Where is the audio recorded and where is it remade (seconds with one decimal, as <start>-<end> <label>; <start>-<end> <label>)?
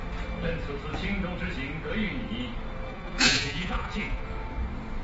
0.0-2.9 recorded; 2.9-4.2 remade; 4.2-5.0 recorded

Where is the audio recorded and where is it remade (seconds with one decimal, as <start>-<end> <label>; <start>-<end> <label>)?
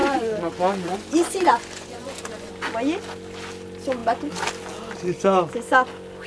0.0-2.5 remade; 2.5-6.3 recorded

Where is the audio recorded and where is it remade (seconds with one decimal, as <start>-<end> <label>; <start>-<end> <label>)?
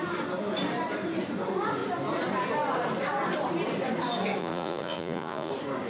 0.0-4.4 recorded; 4.4-5.5 remade; 5.5-5.9 recorded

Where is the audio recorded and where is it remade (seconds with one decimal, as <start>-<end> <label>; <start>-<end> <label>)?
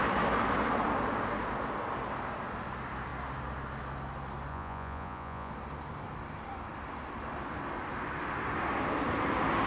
0.0-4.5 recorded; 4.5-5.5 remade; 5.5-9.7 recorded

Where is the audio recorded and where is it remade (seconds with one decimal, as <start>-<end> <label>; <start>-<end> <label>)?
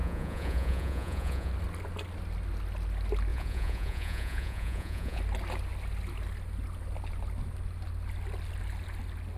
0.0-1.5 remade; 1.5-3.3 recorded; 3.3-5.2 remade; 5.2-9.4 recorded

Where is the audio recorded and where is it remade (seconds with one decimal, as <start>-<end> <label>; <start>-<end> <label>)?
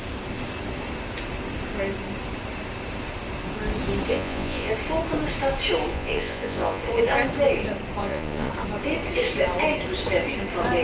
0.0-4.1 recorded; 4.1-4.7 remade; 4.7-5.9 recorded; 5.9-6.8 remade; 6.8-8.0 recorded; 8.0-8.5 remade; 8.5-10.8 recorded